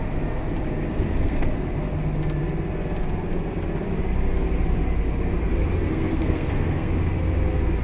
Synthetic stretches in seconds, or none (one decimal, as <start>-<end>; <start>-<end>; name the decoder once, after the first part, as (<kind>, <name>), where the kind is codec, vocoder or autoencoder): 0.9-1.8 (codec, SNAC); 5.9-6.9